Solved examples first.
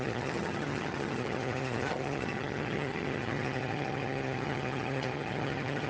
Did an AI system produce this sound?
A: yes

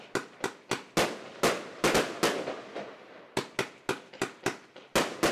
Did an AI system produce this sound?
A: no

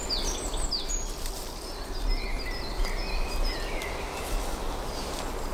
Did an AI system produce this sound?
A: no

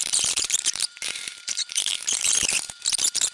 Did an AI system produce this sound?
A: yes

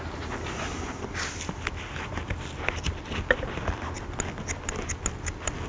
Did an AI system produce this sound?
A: no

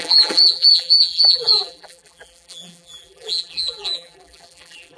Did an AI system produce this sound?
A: yes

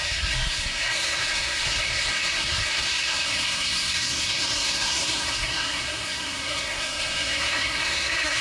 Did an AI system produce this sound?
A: yes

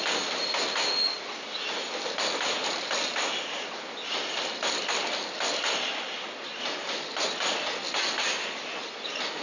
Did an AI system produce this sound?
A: no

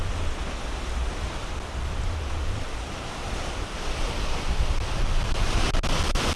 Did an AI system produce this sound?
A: no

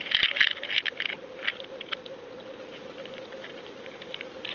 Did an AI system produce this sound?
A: no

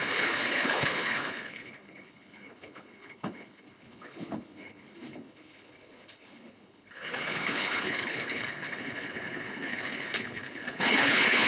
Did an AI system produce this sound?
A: yes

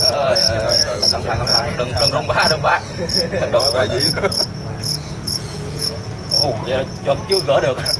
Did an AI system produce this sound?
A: yes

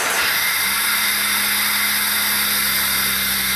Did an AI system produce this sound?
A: no